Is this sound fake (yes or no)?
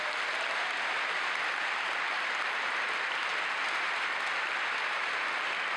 no